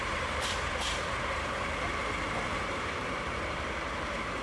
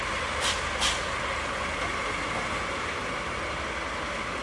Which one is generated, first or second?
first